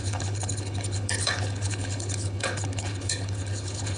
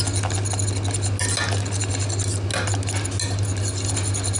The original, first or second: second